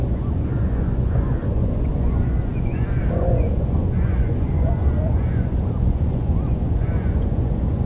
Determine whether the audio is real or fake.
fake